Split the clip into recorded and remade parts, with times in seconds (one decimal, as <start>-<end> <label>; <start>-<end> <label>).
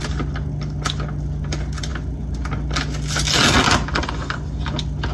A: 0.0-5.1 recorded